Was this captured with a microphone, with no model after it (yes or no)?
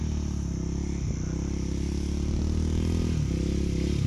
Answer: yes